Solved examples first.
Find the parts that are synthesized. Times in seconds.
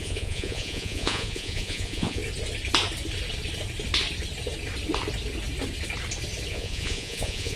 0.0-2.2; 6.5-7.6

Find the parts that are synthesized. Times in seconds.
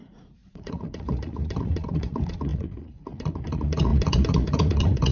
0.0-5.1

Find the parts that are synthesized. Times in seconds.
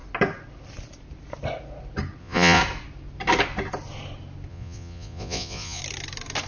2.2-2.6; 4.5-5.8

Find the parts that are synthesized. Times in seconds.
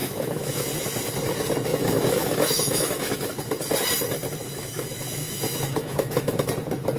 0.0-0.7; 1.7-3.3; 4.4-6.5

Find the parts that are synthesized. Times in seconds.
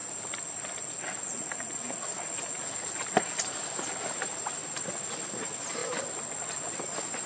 4.0-5.8; 6.7-7.3